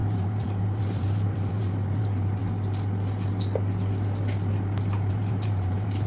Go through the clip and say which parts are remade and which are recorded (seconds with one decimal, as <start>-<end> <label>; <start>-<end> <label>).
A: 0.0-2.4 remade; 2.4-5.1 recorded; 5.1-6.1 remade